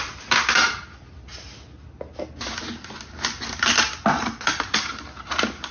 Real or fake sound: real